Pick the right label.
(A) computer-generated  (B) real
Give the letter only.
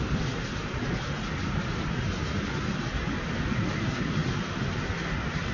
B